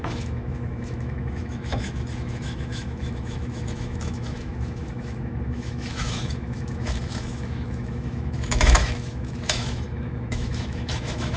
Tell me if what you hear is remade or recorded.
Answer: remade